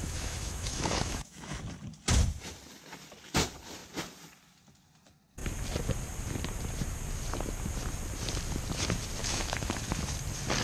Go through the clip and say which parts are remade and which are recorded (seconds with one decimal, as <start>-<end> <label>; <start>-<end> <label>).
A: 0.0-1.6 remade; 1.6-9.2 recorded; 9.2-9.7 remade; 9.7-10.6 recorded